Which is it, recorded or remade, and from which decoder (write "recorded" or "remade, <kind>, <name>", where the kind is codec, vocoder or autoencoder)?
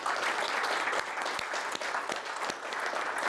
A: recorded